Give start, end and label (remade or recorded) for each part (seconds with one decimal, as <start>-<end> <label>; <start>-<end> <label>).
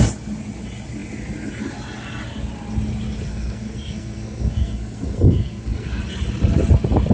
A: 0.0-3.3 recorded; 3.3-6.0 remade; 6.0-7.1 recorded